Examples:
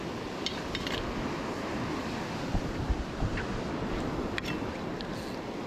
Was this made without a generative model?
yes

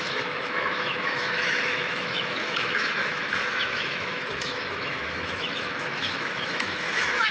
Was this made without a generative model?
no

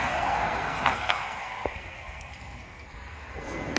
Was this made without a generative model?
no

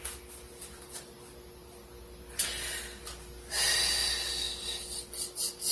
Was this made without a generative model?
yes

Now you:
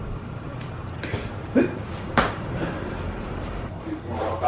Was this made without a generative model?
no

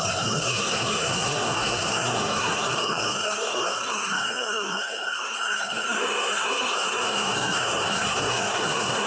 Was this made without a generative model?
no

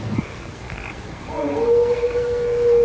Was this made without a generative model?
no